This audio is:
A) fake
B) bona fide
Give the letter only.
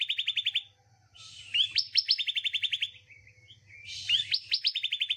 B